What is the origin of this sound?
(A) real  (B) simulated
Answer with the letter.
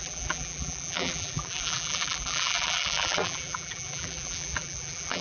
B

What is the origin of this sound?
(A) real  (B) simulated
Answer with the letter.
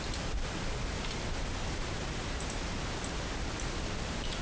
A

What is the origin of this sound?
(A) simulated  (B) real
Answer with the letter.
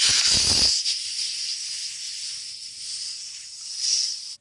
B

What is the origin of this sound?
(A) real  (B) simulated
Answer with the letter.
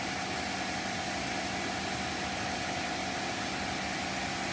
A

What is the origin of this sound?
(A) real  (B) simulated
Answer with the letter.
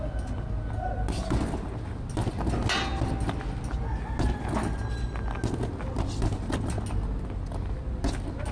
A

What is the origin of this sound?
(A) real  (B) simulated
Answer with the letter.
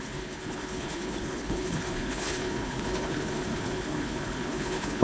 B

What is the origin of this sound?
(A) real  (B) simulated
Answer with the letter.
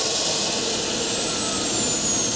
A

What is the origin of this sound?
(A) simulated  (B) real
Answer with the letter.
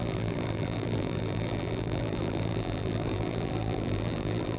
A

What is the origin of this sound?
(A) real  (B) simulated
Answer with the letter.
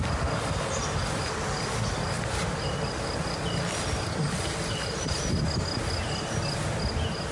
A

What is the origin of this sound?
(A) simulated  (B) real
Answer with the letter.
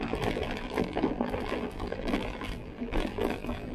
A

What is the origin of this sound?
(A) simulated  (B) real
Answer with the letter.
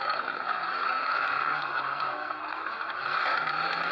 A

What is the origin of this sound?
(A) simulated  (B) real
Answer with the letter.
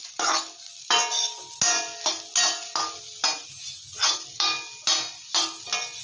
B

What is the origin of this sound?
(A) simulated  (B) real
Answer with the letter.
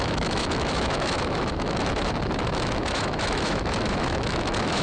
A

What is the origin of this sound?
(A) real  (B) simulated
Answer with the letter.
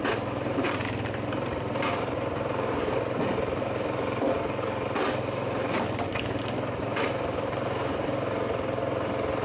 B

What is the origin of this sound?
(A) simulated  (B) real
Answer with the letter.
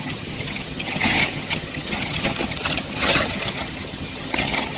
A